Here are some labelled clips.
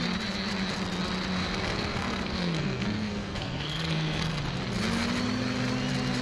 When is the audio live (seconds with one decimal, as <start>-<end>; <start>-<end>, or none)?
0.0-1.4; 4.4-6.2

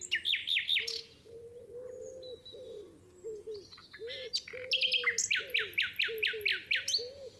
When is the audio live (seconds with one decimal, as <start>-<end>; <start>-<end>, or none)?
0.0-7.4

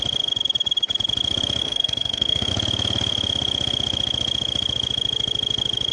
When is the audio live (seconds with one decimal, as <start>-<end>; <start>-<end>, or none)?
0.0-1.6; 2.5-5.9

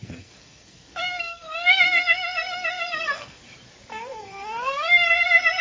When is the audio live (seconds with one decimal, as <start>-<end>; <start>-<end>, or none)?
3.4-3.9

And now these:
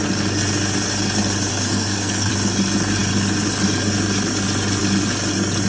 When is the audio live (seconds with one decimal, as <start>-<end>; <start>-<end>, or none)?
0.0-1.5; 2.3-5.7